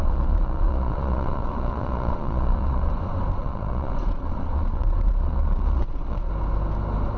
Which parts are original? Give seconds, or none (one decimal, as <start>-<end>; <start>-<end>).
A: 2.9-3.4; 6.3-7.2